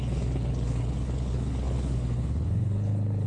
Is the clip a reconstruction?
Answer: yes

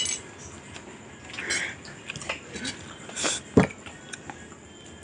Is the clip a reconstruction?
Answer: no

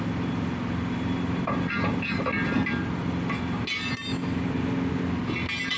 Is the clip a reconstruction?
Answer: no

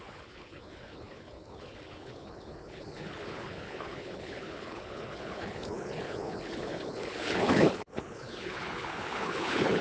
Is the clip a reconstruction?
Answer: yes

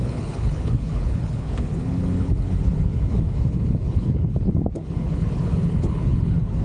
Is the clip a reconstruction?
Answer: yes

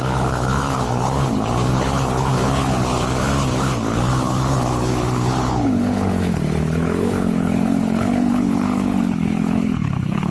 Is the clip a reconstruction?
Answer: yes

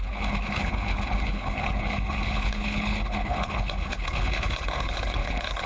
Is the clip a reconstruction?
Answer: yes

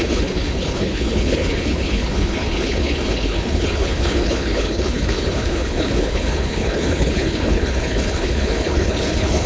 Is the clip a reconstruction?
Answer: yes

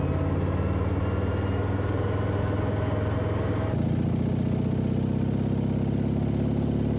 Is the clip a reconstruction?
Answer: no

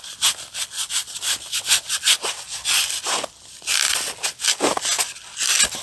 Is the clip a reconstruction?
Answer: no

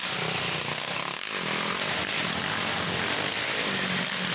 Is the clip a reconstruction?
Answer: no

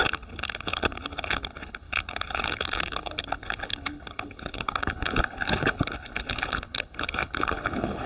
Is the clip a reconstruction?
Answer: yes